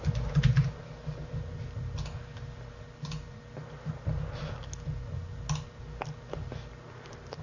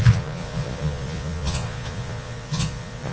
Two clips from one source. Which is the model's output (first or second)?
second